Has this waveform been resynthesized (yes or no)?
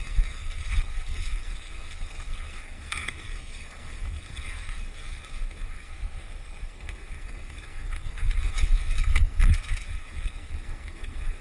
yes